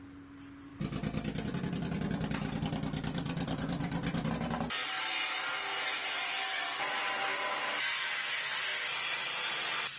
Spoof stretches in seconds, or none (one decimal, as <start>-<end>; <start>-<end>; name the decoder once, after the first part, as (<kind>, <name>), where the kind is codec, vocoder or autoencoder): none

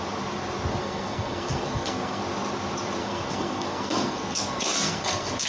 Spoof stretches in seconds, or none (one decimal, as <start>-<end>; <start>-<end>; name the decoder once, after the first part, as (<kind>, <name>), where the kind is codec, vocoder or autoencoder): 0.8-2.2 (codec, SNAC); 3.0-5.5

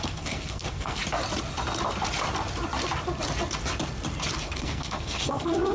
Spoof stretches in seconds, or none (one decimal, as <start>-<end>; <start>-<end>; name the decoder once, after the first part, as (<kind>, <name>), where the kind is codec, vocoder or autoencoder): 0.0-1.0 (codec, SNAC); 4.4-5.7

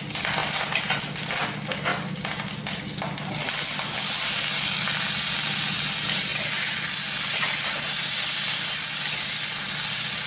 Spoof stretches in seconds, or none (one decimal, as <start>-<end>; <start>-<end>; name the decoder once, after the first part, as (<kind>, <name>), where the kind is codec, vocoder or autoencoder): none

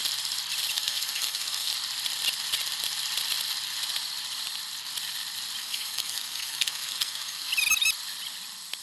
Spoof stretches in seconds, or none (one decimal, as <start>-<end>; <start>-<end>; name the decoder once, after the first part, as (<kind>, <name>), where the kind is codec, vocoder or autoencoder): 0.7-1.7 (codec, SNAC); 5.6-7.5